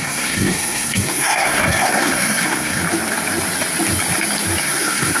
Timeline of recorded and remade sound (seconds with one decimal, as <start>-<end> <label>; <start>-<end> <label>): 0.0-2.8 remade; 2.8-4.6 recorded; 4.6-5.2 remade

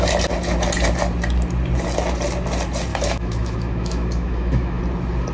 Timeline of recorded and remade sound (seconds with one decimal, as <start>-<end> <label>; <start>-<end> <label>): 0.0-2.9 recorded; 2.9-4.8 remade; 4.8-5.3 recorded

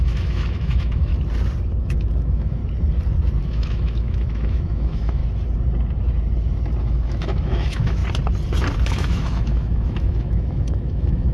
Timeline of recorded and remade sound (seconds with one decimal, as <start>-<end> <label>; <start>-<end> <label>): 0.0-1.1 remade; 1.1-1.8 recorded; 1.8-2.6 remade; 2.6-3.4 recorded; 3.4-5.2 remade; 5.2-6.8 recorded; 6.8-8.0 remade; 8.0-8.9 recorded; 8.9-11.3 remade

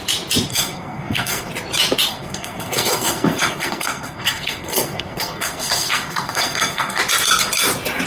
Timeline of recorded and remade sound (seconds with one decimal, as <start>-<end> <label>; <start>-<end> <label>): 0.0-0.5 recorded; 0.5-1.5 remade; 1.5-2.1 recorded; 2.1-7.0 remade; 7.0-8.1 recorded

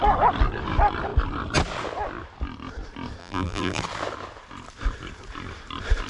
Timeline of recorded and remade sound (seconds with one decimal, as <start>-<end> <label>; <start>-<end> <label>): 0.0-3.2 recorded; 3.2-3.8 remade; 3.8-6.1 recorded